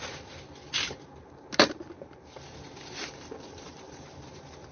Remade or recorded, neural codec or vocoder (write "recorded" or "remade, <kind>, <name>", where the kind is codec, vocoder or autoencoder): remade, vocoder, BigVGAN v2